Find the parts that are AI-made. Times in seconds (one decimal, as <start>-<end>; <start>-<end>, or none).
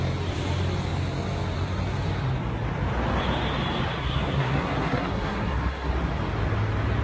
4.0-5.9